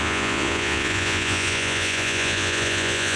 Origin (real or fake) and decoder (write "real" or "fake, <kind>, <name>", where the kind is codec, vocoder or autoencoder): fake, vocoder, Vocos